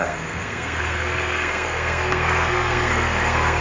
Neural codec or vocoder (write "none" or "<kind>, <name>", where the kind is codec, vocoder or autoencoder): codec, SNAC